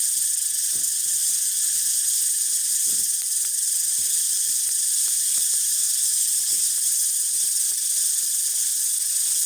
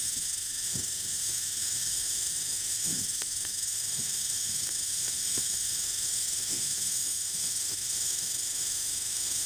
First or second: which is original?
first